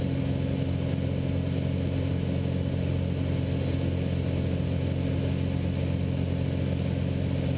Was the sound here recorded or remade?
recorded